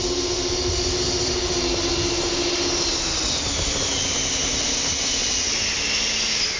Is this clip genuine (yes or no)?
yes